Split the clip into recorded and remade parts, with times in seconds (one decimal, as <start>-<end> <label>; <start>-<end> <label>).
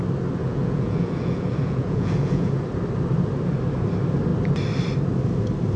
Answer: 0.0-0.4 recorded; 0.4-2.5 remade; 2.5-5.8 recorded